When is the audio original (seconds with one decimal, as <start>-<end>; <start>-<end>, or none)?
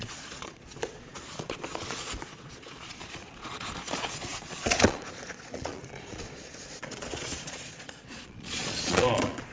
none